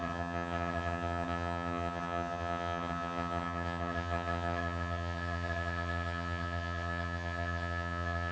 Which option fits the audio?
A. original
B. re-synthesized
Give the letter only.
B